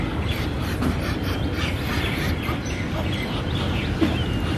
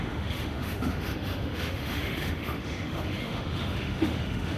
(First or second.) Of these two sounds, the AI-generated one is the second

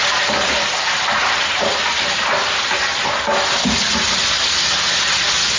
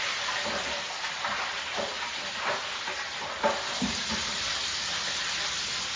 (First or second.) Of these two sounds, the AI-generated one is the second